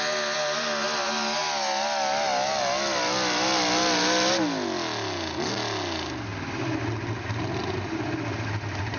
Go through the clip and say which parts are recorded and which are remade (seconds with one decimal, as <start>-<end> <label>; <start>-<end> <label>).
0.0-9.0 recorded